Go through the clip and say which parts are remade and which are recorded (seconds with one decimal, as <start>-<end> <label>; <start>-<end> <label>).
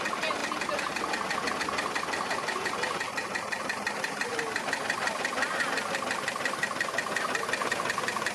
0.0-8.3 recorded